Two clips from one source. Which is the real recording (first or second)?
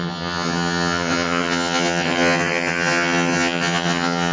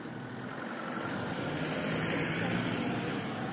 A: second